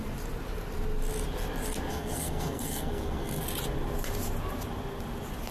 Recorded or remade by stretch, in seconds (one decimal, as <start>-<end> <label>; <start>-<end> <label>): 0.0-1.9 recorded; 1.9-3.4 remade; 3.4-5.5 recorded